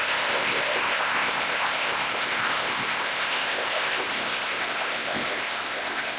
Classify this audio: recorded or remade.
remade